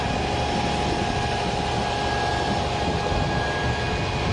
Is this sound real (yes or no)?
yes